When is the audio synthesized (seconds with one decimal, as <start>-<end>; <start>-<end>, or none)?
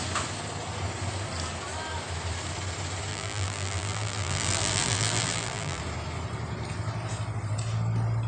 3.1-5.8